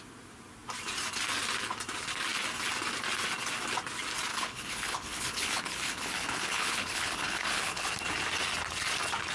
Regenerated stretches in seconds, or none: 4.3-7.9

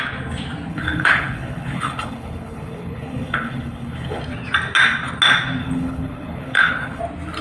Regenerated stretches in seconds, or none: 0.7-4.2; 5.6-7.0

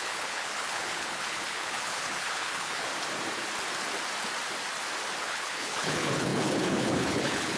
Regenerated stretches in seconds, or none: 0.0-2.9; 5.2-7.6

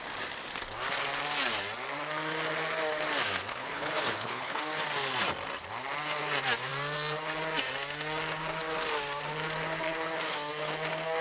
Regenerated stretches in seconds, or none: 3.5-4.6

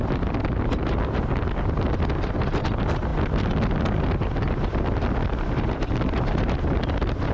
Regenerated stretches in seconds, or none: none

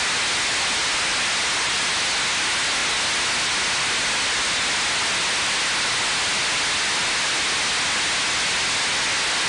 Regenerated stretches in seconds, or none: none

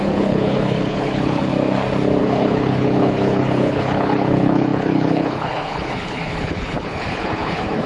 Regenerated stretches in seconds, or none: 0.0-1.5; 2.2-7.9